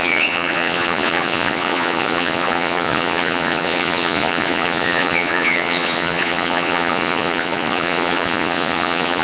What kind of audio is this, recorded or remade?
remade